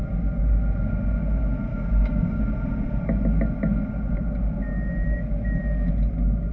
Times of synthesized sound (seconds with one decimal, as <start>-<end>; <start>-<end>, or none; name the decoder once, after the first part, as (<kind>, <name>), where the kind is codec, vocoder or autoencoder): 1.7-2.4 (codec, DAC)